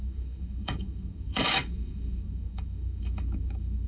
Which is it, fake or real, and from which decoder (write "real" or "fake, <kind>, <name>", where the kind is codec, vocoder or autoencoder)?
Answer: fake, autoencoder, DAC-VAE